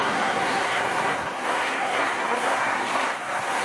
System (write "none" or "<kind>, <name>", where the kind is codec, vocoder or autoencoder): codec, SNAC